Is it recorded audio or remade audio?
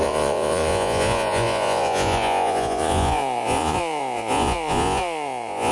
remade